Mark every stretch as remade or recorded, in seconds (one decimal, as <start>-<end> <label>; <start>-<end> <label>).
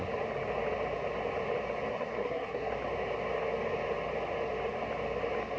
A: 0.0-1.9 recorded; 1.9-2.7 remade; 2.7-5.6 recorded